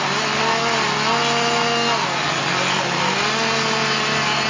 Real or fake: real